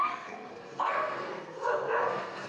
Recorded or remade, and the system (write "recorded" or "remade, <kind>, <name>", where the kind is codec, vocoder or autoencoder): remade, codec, SNAC